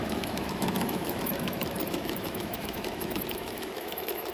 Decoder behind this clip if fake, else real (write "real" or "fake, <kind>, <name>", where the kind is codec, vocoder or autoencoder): fake, autoencoder, DAC-VAE